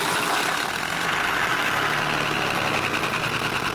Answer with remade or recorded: recorded